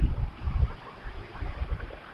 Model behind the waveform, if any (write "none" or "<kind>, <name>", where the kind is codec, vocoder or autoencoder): vocoder, BigVGAN v2